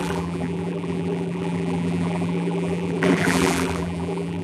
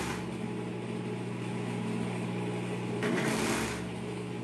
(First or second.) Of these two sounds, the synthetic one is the first